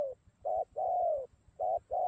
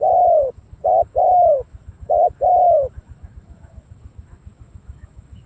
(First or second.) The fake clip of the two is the second